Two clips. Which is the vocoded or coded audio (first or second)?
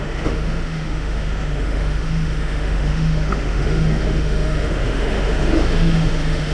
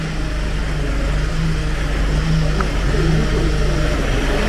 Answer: first